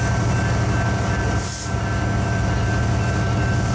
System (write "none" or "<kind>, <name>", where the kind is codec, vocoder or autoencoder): none